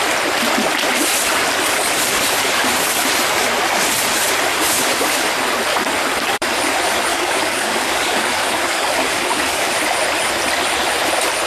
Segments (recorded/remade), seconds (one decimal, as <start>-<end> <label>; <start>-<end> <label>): 0.0-7.1 recorded; 7.1-9.7 remade; 9.7-11.5 recorded